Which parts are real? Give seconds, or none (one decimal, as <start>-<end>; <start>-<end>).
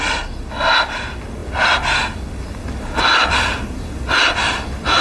0.0-5.0